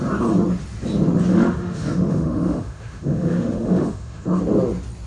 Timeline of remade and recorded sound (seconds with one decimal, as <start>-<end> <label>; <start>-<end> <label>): 0.0-1.3 recorded; 1.3-4.4 remade; 4.4-5.1 recorded